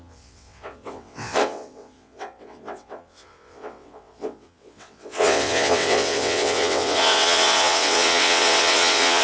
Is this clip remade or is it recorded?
remade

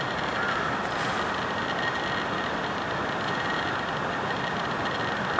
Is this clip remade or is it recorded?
recorded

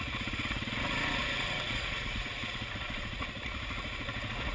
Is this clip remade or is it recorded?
remade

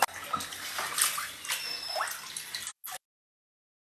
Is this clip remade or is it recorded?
recorded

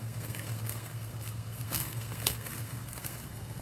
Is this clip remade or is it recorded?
remade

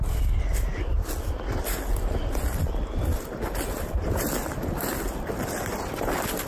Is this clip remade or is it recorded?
recorded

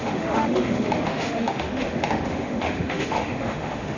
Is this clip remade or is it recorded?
remade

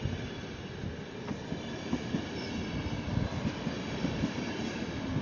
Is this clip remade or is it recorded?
recorded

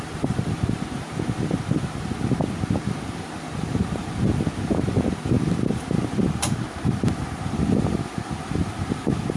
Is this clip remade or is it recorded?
remade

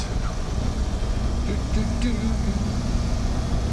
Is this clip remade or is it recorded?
remade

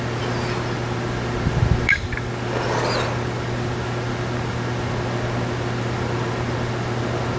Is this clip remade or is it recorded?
remade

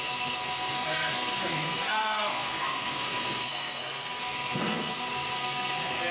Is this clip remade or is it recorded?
remade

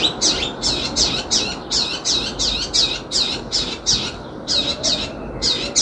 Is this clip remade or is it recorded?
recorded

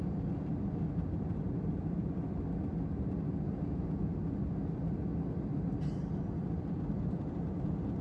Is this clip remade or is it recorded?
recorded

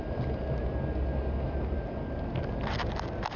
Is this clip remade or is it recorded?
recorded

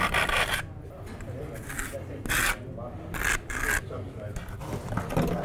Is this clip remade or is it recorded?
recorded